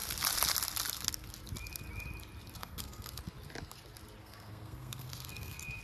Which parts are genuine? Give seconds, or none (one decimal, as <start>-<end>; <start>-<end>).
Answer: 0.0-2.6; 3.2-4.2